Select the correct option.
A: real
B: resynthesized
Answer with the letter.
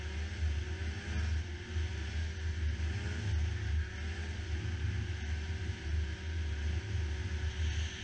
A